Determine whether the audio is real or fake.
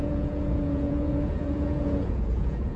fake